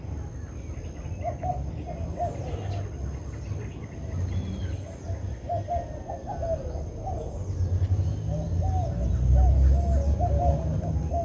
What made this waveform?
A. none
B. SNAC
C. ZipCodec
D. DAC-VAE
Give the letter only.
A